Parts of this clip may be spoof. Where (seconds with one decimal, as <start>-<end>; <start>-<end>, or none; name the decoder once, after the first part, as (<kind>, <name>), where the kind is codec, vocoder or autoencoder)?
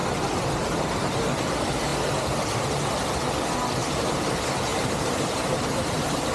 3.8-4.3 (vocoder, BigVGAN v2); 4.7-6.3